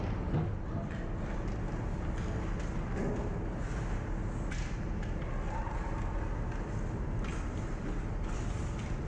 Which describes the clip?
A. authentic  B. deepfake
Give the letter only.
A